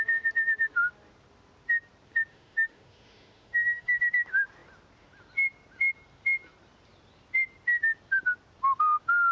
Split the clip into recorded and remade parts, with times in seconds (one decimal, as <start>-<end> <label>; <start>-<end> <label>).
0.0-2.3 recorded; 2.3-4.0 remade; 4.0-9.3 recorded